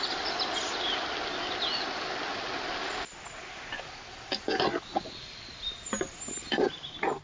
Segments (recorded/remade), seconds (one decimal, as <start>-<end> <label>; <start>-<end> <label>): 0.0-7.2 recorded